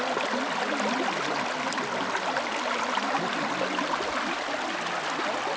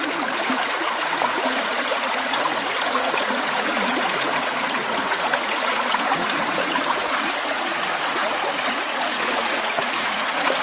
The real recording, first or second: first